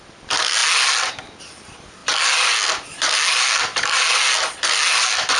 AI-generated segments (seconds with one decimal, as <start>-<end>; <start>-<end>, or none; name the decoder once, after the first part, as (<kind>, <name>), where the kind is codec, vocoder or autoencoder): none

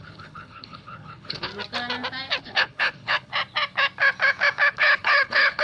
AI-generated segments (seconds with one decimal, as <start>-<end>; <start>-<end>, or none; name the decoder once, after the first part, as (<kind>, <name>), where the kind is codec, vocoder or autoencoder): 0.0-1.5 (codec, HILCodec); 2.4-3.3; 4.7-5.6